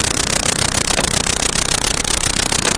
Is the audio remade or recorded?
recorded